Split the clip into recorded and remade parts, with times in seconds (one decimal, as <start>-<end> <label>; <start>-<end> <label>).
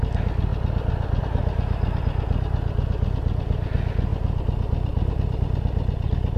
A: 0.0-6.4 recorded